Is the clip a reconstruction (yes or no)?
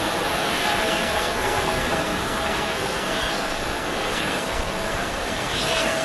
yes